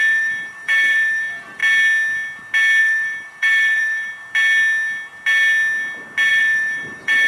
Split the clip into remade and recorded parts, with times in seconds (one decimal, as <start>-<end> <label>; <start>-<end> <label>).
0.0-1.6 remade; 1.6-2.8 recorded; 2.8-4.1 remade; 4.1-6.3 recorded; 6.3-7.3 remade